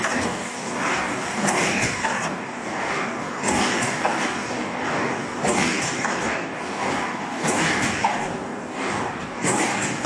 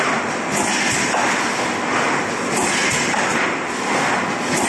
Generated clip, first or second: first